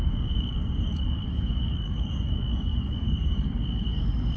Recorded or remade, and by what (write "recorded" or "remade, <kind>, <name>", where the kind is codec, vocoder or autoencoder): remade, codec, DAC